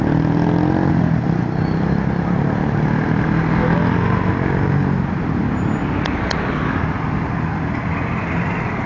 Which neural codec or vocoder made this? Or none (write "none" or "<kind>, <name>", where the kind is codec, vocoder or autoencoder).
none